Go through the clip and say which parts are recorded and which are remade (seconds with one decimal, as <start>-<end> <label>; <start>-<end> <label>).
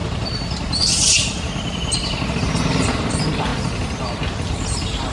0.0-3.5 remade; 3.5-4.3 recorded; 4.3-5.1 remade